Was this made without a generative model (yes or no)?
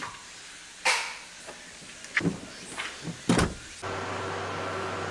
yes